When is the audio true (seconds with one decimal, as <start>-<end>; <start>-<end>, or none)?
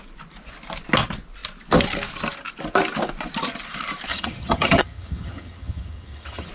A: 0.0-4.1